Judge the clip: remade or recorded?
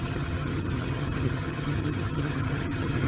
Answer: remade